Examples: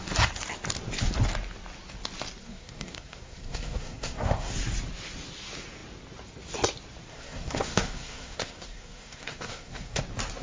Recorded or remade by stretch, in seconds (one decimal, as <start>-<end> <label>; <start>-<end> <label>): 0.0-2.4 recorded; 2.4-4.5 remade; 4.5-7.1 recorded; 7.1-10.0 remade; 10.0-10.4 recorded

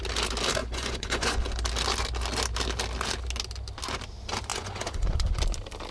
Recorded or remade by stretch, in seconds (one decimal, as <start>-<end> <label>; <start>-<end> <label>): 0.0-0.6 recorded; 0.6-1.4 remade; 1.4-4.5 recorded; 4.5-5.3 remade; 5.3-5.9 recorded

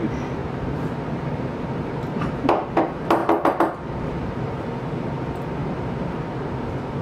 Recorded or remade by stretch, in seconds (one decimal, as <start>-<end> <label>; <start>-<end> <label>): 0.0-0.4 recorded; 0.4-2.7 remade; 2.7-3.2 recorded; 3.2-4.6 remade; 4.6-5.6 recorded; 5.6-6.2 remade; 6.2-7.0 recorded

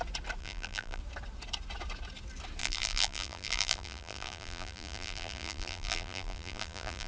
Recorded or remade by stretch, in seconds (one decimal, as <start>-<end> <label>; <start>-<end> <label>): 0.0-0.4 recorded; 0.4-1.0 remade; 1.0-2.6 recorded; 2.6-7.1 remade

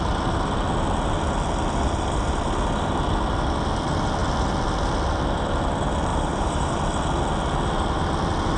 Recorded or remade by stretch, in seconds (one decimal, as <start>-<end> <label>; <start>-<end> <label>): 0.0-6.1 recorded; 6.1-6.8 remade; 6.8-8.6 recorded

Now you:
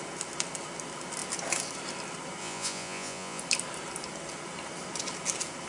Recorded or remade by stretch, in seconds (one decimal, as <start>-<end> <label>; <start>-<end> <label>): 0.0-2.4 recorded; 2.4-3.4 remade; 3.4-5.7 recorded